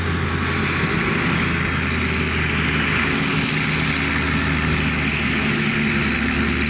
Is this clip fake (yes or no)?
no